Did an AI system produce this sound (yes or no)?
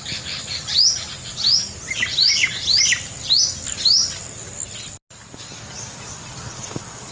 no